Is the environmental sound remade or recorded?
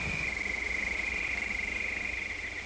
recorded